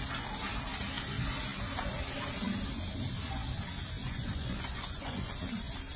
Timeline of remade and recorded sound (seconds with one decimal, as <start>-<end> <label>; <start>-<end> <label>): 0.0-4.0 recorded; 4.0-5.3 remade; 5.3-6.0 recorded